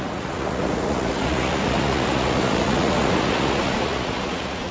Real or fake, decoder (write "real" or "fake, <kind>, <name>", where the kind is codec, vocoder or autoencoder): fake, vocoder, Vocos